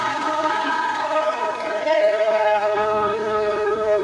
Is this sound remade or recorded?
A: remade